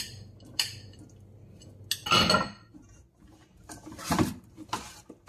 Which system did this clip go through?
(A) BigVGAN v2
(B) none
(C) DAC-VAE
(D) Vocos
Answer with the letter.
B